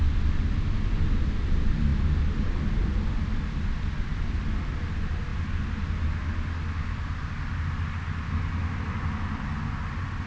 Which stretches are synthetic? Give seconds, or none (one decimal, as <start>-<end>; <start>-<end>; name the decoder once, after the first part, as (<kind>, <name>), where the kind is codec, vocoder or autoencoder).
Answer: none